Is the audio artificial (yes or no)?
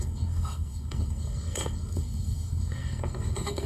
yes